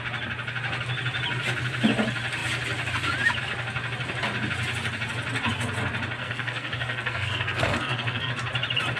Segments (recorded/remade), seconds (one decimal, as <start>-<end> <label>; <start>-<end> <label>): 0.0-6.2 recorded; 6.2-8.3 remade; 8.3-9.0 recorded